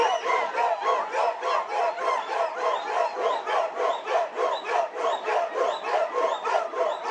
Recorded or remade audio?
remade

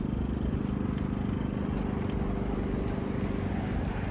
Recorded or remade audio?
recorded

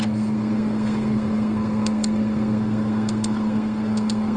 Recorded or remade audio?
remade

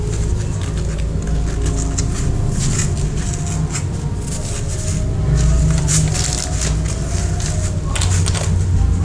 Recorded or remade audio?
recorded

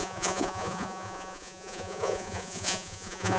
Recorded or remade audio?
remade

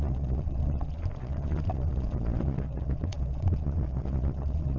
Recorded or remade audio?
remade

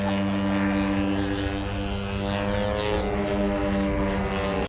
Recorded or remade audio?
recorded